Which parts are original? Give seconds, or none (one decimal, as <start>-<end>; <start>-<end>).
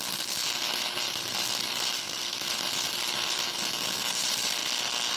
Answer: 0.0-2.0; 2.5-5.2